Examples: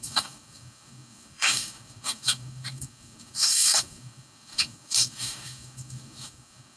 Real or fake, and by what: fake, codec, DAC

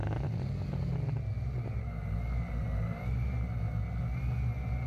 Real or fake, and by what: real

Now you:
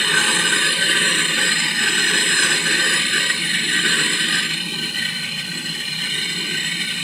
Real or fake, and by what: real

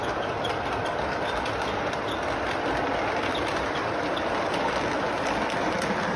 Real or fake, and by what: real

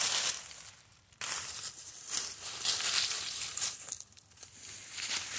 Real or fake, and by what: real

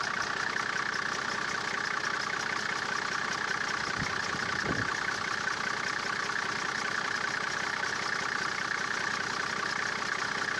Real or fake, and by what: real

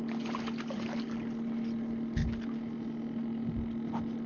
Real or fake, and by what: real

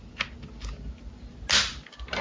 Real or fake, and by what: real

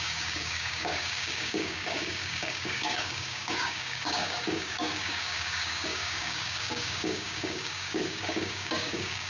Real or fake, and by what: fake, codec, DAC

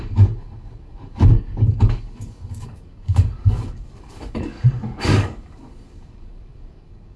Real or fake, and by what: fake, codec, DAC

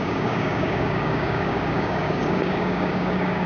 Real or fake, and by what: fake, codec, DAC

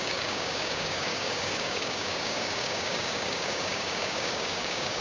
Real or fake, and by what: fake, codec, DAC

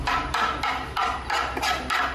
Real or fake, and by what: real